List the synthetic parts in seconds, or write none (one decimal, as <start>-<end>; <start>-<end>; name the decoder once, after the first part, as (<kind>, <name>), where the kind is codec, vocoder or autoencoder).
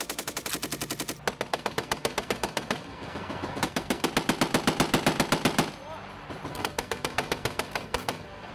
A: 1.5-4.1 (codec, SNAC); 6.5-8.5